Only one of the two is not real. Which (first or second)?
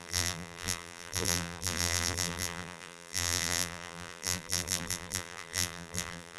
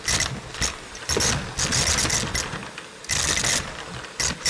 first